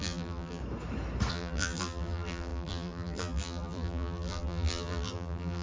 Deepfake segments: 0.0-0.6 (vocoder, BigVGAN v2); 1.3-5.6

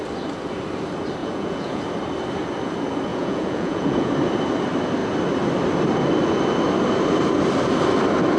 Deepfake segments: 1.2-1.8 (vocoder, Vocos); 3.1-4.1

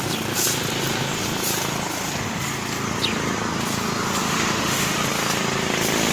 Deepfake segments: 4.2-5.0 (autoencoder, DAC-VAE)

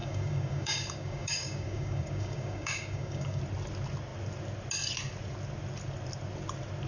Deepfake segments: 0.0-3.4 (codec, DAC)

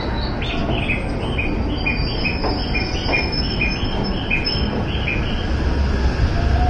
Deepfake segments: none

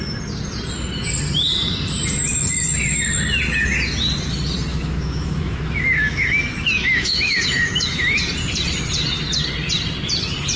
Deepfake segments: 4.7-8.2 (autoencoder, DAC-VAE)

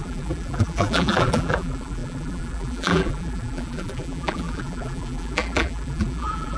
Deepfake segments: 0.0-6.6 (vocoder, BigVGAN v2)